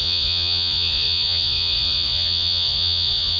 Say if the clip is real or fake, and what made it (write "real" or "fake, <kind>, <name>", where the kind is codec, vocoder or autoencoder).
fake, vocoder, Vocos